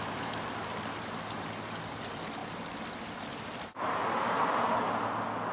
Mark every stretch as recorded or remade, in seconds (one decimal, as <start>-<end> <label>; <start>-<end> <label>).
0.0-5.5 recorded